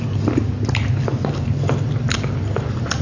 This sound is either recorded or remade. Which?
recorded